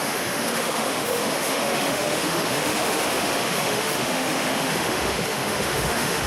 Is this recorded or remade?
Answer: remade